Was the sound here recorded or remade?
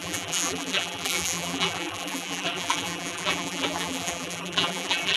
remade